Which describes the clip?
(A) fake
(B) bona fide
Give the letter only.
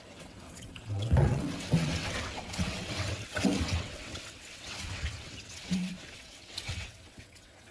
A